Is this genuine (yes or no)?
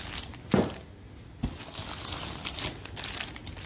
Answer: yes